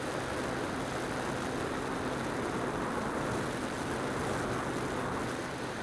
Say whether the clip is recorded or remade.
recorded